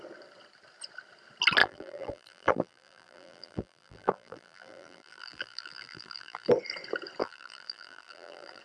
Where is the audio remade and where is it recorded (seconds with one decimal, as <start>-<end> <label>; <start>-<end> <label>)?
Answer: 0.0-1.6 recorded; 1.6-6.5 remade; 6.5-7.2 recorded; 7.2-8.6 remade